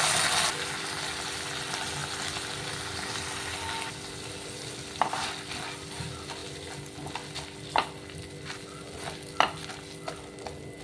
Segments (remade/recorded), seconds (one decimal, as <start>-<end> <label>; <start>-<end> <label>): 0.0-10.8 recorded